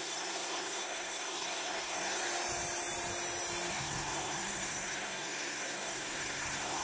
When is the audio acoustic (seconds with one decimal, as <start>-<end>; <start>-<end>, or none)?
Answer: 2.2-3.7